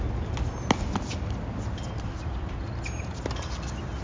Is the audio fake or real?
real